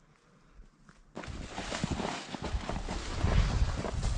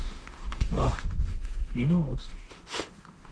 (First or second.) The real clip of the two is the first